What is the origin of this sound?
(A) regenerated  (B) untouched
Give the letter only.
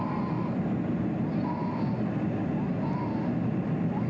B